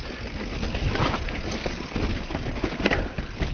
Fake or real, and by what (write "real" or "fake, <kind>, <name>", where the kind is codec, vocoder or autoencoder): real